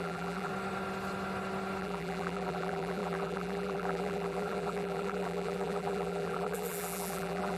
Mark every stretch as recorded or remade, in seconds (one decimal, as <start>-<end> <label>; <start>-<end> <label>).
0.0-0.5 remade; 0.5-1.8 recorded; 1.8-7.6 remade